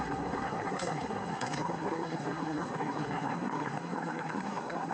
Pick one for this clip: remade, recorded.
remade